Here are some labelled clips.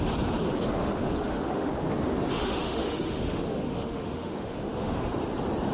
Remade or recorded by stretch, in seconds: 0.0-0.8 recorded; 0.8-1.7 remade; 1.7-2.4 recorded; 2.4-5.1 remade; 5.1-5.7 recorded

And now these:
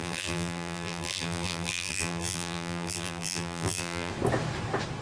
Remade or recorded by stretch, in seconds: 0.0-4.1 remade; 4.1-5.0 recorded

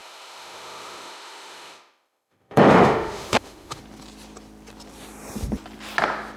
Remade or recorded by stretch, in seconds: 0.0-3.8 remade; 3.8-6.4 recorded

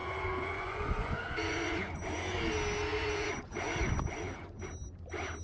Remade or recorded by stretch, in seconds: 0.0-2.4 remade; 2.4-2.9 recorded; 2.9-4.7 remade; 4.7-5.4 recorded

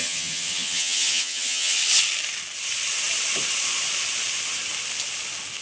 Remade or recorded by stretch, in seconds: 0.0-1.8 remade; 1.8-5.6 recorded

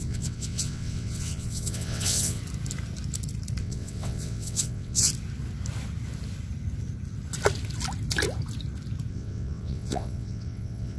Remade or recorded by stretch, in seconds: 0.0-2.4 remade; 2.4-3.6 recorded; 3.6-5.1 remade; 5.1-9.1 recorded; 9.1-11.0 remade

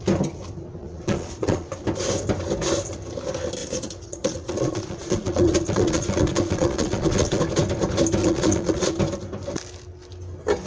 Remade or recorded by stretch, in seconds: 0.0-0.8 recorded; 0.8-1.7 remade; 1.7-3.6 recorded; 3.6-7.4 remade; 7.4-8.2 recorded; 8.2-8.9 remade; 8.9-10.7 recorded

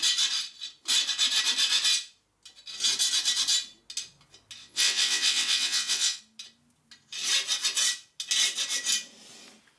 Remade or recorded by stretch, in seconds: 0.0-4.6 recorded; 4.6-6.2 remade; 6.2-9.8 recorded